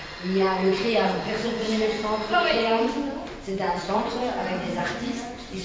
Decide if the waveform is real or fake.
fake